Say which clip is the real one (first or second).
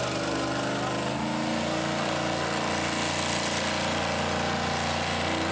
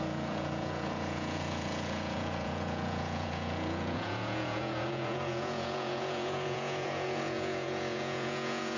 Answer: first